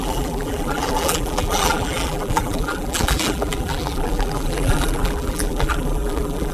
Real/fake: fake